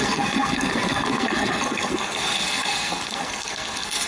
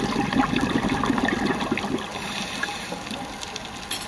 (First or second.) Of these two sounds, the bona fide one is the second